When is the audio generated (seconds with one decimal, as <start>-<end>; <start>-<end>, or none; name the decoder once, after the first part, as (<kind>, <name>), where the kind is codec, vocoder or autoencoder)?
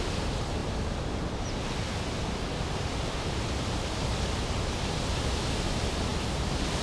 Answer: none